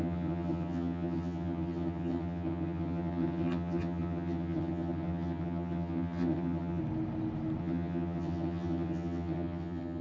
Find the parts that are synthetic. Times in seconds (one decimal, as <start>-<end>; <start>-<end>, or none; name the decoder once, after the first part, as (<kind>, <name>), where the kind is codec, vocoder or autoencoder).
0.0-6.8 (vocoder, HiFi-GAN); 7.6-10.0